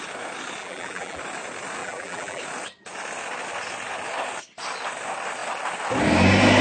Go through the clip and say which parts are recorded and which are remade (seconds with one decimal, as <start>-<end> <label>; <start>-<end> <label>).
0.0-0.6 recorded; 0.6-1.2 remade; 1.2-1.8 recorded; 1.8-2.4 remade; 2.4-6.6 recorded